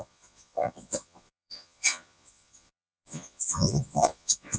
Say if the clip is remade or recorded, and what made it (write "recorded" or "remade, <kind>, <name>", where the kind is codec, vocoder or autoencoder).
remade, vocoder, Vocos